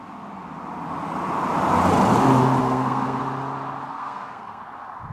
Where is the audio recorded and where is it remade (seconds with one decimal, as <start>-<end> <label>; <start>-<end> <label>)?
0.0-2.6 recorded; 2.6-3.2 remade; 3.2-3.9 recorded; 3.9-4.6 remade; 4.6-5.1 recorded